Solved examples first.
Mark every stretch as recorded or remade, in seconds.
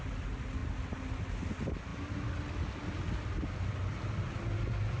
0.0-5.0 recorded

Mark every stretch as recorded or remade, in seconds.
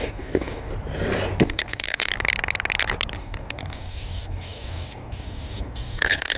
0.0-0.7 remade; 0.7-1.4 recorded; 1.4-2.1 remade; 2.1-3.2 recorded; 3.2-6.4 remade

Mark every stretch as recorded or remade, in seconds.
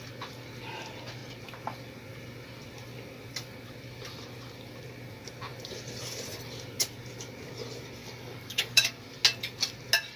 0.0-8.0 recorded; 8.0-8.9 remade; 8.9-10.2 recorded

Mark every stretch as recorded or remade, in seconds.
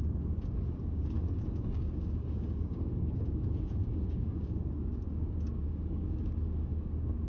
0.0-7.3 remade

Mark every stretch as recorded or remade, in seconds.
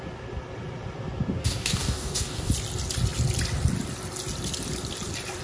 0.0-1.4 recorded; 1.4-2.5 remade; 2.5-5.4 recorded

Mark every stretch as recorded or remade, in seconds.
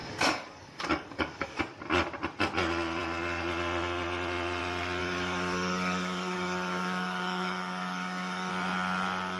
0.0-1.6 remade; 1.6-5.0 recorded; 5.0-8.5 remade; 8.5-9.4 recorded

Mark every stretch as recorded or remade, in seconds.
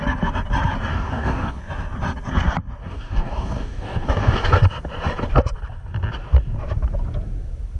0.0-0.9 recorded; 0.9-1.6 remade; 1.6-2.8 recorded; 2.8-4.5 remade; 4.5-7.8 recorded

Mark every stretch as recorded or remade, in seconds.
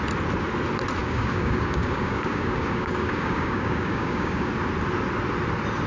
0.0-1.0 recorded; 1.0-4.5 remade; 4.5-5.9 recorded